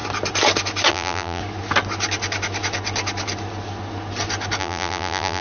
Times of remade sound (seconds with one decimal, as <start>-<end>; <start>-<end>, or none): 0.9-1.4; 4.6-5.4